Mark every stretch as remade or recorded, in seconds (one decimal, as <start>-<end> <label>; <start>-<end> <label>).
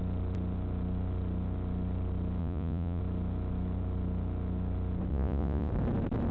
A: 0.0-2.4 recorded; 2.4-3.0 remade; 3.0-5.1 recorded; 5.1-5.7 remade; 5.7-6.3 recorded